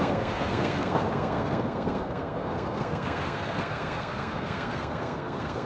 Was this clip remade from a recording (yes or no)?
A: yes